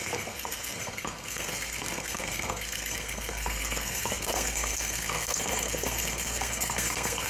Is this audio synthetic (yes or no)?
yes